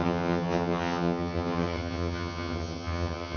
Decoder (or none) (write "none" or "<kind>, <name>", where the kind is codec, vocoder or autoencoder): vocoder, HiFi-GAN